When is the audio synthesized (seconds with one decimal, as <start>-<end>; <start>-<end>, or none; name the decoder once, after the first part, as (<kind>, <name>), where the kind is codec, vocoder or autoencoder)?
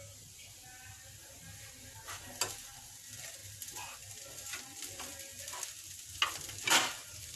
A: none